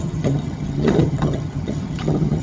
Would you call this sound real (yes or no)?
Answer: no